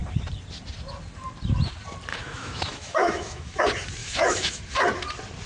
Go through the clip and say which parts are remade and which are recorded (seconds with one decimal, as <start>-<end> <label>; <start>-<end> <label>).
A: 0.0-2.1 recorded; 2.1-3.6 remade; 3.6-4.0 recorded; 4.0-4.6 remade; 4.6-5.5 recorded